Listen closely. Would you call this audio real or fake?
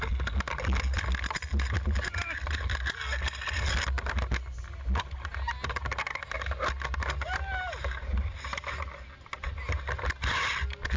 real